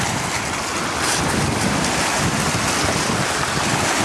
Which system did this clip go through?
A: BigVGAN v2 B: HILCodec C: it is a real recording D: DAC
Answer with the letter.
C